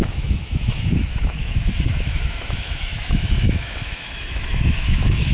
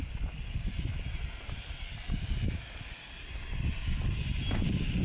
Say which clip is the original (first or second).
second